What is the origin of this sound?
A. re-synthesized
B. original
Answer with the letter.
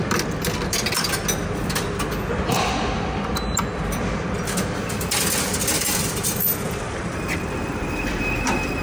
B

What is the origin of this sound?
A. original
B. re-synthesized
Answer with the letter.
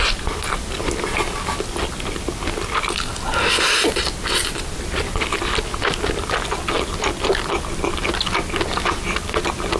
A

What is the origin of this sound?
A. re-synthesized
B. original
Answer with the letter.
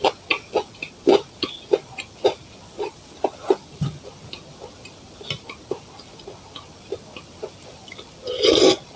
B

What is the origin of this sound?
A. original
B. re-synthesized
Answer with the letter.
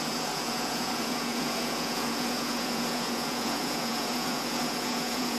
B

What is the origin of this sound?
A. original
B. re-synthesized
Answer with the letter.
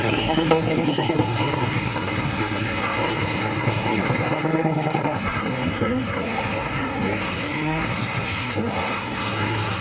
B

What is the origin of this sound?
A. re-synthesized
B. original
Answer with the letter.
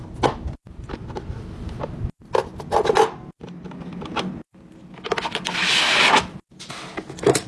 B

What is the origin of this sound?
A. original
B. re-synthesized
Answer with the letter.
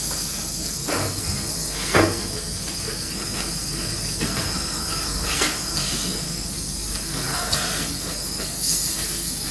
B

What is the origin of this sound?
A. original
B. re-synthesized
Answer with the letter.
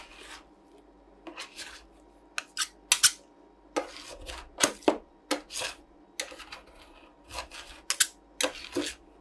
A